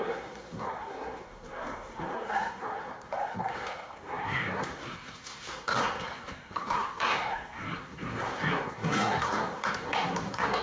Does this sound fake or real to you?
fake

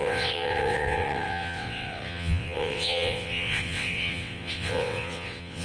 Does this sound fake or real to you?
fake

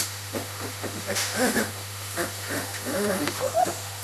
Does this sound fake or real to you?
fake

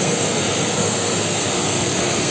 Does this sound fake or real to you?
fake